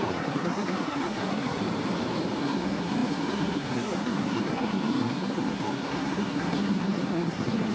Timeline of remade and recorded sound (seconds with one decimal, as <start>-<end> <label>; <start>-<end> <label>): 0.0-1.6 remade; 1.6-2.4 recorded; 2.4-7.7 remade